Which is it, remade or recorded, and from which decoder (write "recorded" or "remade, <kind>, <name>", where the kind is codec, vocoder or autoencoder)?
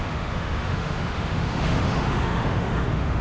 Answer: remade, autoencoder, DAC-VAE